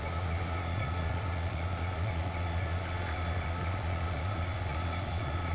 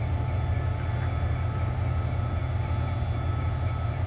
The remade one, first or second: first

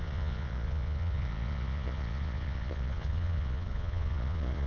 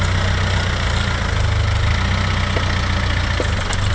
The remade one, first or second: first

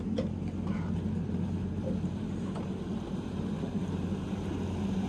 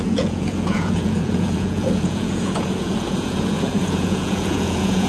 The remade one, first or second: second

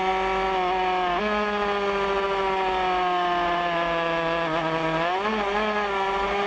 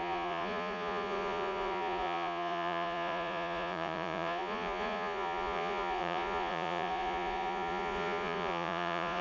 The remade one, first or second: second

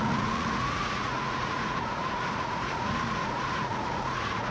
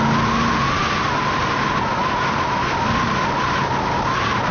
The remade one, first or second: first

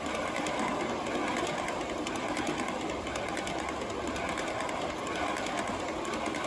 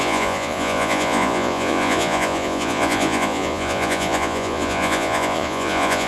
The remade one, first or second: second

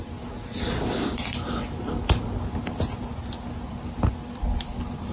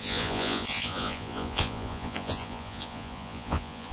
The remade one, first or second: second